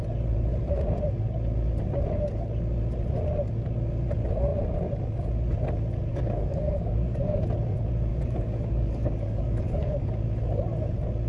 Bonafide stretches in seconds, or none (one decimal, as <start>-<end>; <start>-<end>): 0.0-6.1; 7.4-8.1; 10.1-11.3

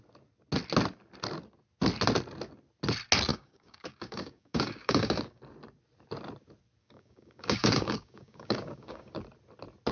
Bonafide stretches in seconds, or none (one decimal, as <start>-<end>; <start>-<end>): 0.0-3.3; 5.4-6.8; 9.1-9.9

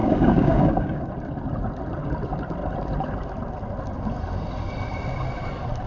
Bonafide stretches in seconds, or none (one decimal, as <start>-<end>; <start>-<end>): 1.1-5.9